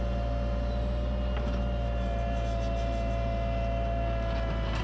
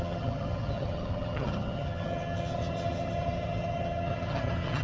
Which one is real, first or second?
first